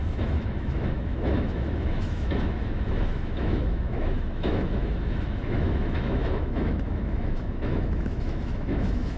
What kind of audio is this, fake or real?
fake